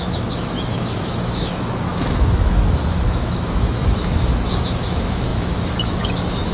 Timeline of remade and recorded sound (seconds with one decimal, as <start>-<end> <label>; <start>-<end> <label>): 0.0-6.5 remade